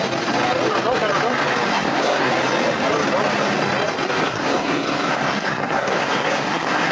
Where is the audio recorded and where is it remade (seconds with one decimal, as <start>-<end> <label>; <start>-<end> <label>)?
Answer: 0.0-1.7 recorded; 1.7-2.3 remade; 2.3-4.2 recorded; 4.2-6.9 remade